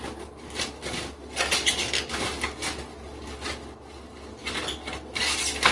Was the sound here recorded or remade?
recorded